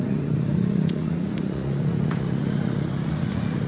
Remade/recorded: remade